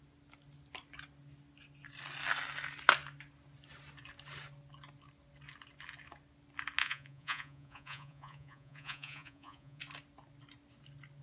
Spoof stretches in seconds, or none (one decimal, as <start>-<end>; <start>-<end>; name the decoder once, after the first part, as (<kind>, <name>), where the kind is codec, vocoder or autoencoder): 6.8-9.8 (vocoder, Vocos)